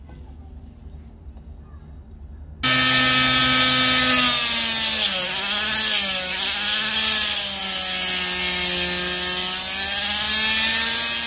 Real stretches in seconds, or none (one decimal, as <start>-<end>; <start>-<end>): 0.0-11.3